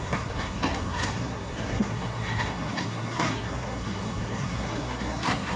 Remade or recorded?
remade